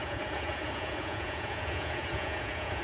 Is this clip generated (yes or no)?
yes